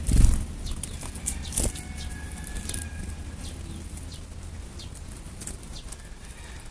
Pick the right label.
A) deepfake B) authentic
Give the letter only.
B